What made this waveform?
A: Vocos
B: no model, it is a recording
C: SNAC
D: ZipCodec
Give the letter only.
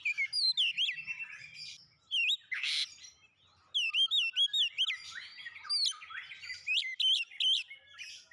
B